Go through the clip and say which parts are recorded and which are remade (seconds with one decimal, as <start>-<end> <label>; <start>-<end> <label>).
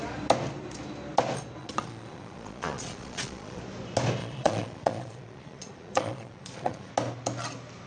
0.0-1.6 recorded; 1.6-3.6 remade; 3.6-4.2 recorded; 4.2-6.9 remade; 6.9-7.9 recorded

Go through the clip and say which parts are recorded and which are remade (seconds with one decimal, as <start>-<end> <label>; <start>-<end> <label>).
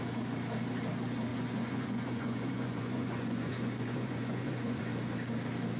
0.0-1.3 recorded; 1.3-4.8 remade; 4.8-5.8 recorded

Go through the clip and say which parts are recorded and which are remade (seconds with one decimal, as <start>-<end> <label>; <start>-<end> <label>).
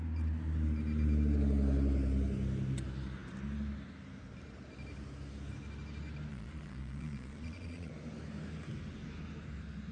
0.0-6.3 recorded; 6.3-7.9 remade; 7.9-9.9 recorded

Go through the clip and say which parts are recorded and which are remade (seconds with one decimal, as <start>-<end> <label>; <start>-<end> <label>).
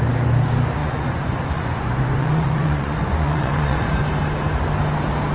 0.0-0.8 recorded; 0.8-4.0 remade; 4.0-5.3 recorded